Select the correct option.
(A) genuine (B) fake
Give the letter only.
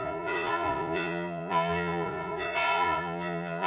B